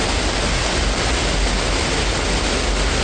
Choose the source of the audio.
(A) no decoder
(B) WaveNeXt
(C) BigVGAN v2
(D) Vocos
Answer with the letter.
A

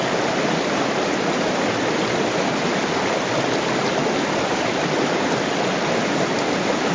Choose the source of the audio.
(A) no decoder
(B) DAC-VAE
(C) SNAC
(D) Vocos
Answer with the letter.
A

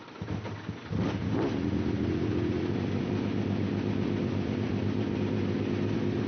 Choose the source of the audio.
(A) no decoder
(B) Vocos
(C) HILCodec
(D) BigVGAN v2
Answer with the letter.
D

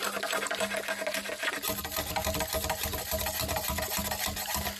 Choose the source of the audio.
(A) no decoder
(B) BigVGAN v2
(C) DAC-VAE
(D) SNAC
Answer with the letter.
A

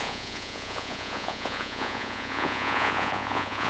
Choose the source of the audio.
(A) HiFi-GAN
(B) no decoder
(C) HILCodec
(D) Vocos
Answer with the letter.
D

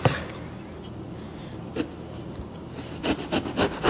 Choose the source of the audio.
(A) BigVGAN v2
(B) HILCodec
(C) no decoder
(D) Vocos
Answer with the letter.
A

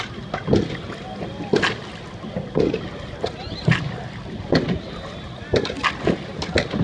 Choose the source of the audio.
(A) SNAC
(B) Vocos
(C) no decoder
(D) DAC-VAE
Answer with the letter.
C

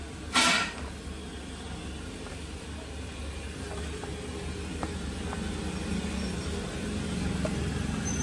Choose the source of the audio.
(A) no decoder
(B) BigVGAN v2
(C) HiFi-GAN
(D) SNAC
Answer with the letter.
A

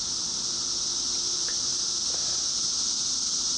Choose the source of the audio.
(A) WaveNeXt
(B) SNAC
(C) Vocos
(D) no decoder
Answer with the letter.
D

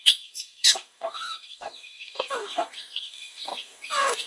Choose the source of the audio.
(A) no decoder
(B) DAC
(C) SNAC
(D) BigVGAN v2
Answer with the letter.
B